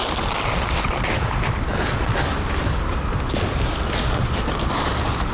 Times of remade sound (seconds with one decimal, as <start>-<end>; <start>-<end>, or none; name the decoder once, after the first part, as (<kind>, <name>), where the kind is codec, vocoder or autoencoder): none